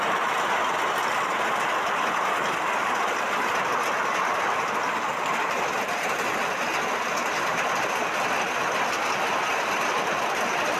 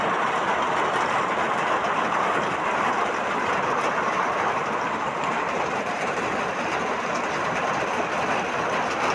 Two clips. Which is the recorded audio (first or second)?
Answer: first